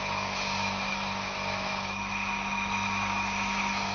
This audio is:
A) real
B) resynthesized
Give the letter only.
B